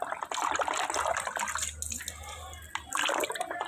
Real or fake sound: real